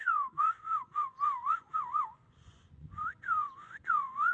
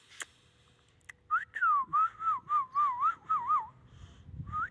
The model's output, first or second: first